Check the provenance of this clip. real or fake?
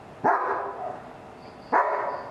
real